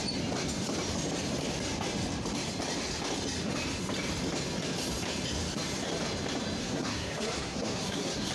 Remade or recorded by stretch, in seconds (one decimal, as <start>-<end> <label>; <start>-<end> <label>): 0.0-6.6 recorded; 6.6-8.3 remade